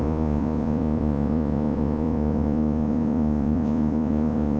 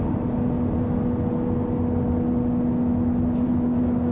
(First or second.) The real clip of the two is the second